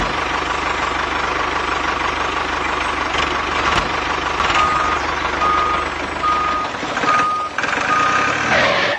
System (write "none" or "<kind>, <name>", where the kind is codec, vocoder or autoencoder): none